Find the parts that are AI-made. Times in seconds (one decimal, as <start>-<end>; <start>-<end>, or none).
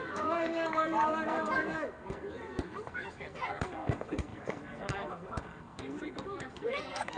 0.0-7.2